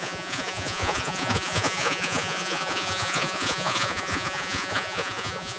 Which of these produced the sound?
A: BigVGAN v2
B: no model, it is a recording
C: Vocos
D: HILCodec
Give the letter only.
C